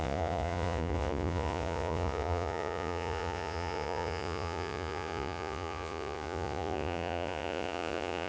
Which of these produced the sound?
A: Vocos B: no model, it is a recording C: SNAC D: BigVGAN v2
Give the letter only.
A